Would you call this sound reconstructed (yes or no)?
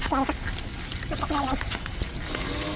no